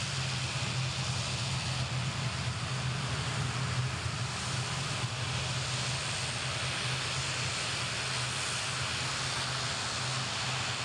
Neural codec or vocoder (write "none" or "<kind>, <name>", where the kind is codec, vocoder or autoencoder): none